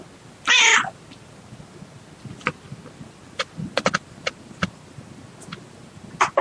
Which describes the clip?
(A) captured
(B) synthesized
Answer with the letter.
A